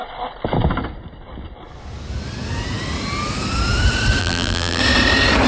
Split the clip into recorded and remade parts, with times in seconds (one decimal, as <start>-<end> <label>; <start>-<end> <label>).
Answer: 0.0-4.2 recorded; 4.2-4.8 remade; 4.8-5.5 recorded